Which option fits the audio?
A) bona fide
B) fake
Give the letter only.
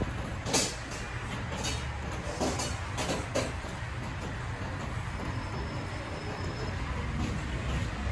A